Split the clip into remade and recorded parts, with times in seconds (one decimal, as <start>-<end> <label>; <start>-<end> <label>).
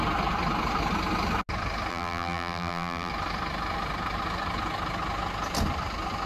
0.0-1.9 recorded; 1.9-3.1 remade; 3.1-6.3 recorded